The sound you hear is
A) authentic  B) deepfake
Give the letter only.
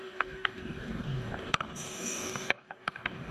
B